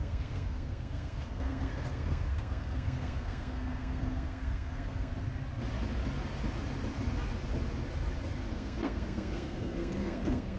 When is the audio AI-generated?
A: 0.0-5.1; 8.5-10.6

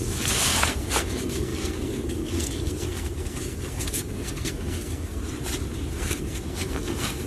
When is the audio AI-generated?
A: 0.0-5.2; 5.9-7.3

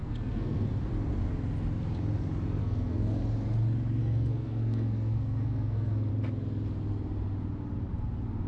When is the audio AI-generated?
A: 0.0-0.7; 2.6-3.1; 4.0-6.1